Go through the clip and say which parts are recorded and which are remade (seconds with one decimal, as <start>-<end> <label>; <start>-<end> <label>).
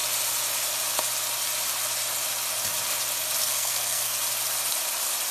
0.0-3.4 recorded; 3.4-4.2 remade; 4.2-5.3 recorded